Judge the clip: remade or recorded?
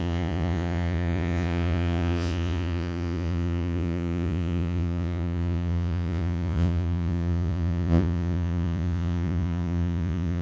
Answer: remade